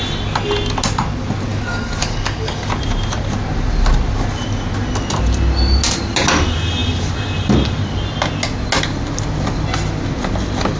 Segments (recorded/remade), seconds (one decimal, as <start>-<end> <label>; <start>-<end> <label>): 0.0-1.5 recorded; 1.5-2.7 remade; 2.7-10.8 recorded